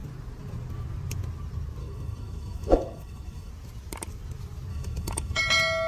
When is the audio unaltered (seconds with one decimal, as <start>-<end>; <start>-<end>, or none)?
0.0-1.8; 3.5-4.7; 5.4-5.9